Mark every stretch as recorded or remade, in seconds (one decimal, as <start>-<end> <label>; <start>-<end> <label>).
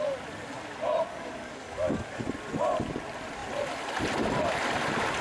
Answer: 0.0-1.1 recorded; 1.1-2.2 remade; 2.2-5.2 recorded